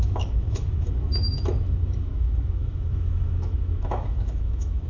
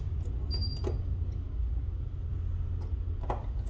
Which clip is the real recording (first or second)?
second